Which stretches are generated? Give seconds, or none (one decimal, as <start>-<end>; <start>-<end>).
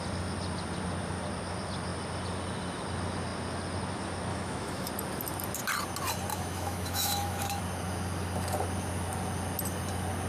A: 4.3-4.9; 6.3-7.6